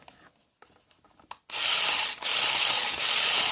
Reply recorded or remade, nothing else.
recorded